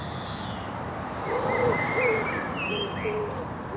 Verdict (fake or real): real